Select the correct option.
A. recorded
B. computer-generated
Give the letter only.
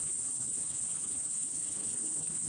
B